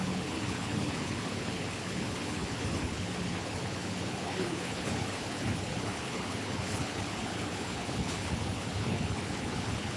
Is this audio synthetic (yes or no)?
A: yes